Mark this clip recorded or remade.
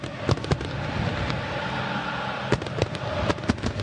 recorded